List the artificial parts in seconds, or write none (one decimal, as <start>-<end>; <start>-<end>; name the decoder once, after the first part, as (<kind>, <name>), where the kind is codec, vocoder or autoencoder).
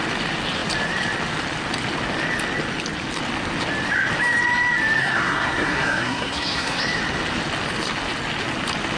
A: 5.0-6.8 (codec, SNAC)